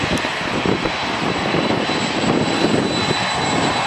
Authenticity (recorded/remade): recorded